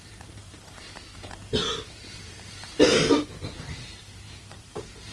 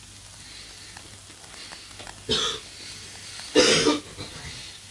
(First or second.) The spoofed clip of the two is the first